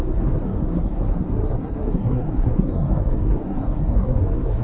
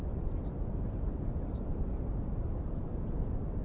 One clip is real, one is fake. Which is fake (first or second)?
first